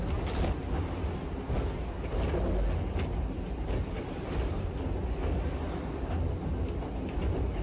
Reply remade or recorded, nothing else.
recorded